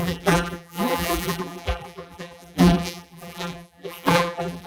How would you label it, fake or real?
fake